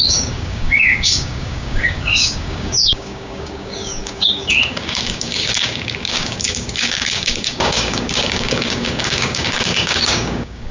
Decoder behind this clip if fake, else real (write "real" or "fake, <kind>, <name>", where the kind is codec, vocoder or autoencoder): fake, codec, DAC